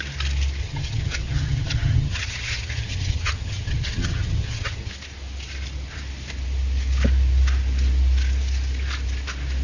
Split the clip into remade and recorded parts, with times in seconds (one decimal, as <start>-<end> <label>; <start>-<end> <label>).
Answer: 0.0-0.6 recorded; 0.6-4.9 remade; 4.9-9.6 recorded